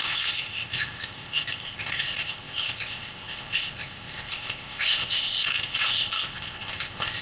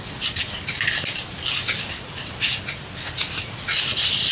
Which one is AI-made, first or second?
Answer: first